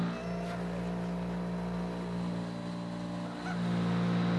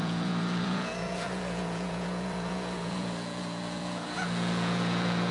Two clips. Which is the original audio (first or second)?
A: first